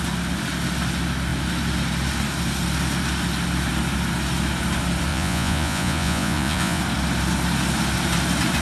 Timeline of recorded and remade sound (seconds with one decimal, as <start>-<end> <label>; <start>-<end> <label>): 0.0-5.1 recorded; 5.1-6.8 remade; 6.8-8.6 recorded